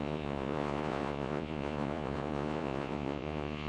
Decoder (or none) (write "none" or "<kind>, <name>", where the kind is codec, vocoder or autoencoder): vocoder, Vocos